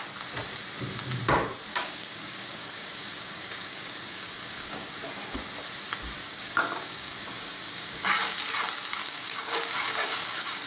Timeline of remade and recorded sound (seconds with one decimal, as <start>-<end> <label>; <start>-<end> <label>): 0.0-1.7 recorded; 1.7-4.9 remade; 4.9-6.2 recorded; 6.2-8.4 remade; 8.4-9.0 recorded; 9.0-10.7 remade